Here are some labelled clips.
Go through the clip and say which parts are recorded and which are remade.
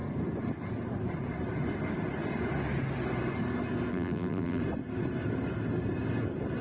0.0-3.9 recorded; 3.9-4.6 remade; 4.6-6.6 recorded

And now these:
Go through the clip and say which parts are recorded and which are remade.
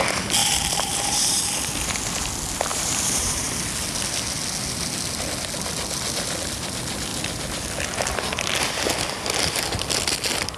0.0-0.4 recorded; 0.4-1.4 remade; 1.4-2.7 recorded; 2.7-3.5 remade; 3.5-10.6 recorded